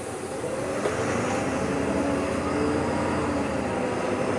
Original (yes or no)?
yes